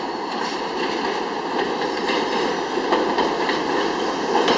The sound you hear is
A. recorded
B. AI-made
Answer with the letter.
A